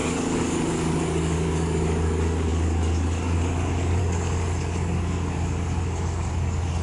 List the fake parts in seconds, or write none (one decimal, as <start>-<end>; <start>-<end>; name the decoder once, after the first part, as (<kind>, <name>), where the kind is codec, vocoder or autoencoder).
0.0-6.8 (codec, DAC)